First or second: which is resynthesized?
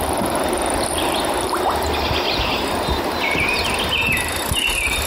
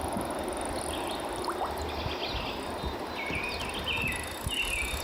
first